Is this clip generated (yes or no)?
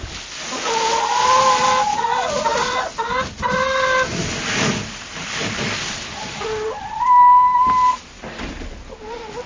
no